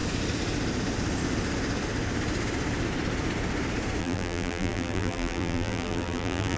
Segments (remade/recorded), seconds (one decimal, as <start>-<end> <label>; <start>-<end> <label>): 0.0-4.0 recorded; 4.0-6.6 remade